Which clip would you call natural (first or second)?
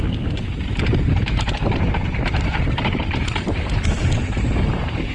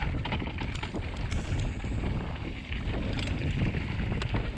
second